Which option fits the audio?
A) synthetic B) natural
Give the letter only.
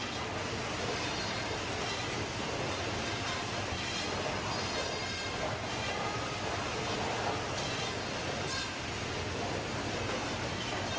B